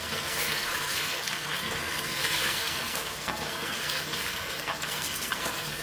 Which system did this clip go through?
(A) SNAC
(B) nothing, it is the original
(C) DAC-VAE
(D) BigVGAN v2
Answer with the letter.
A